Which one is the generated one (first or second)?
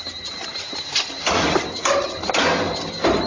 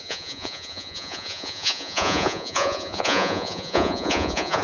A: second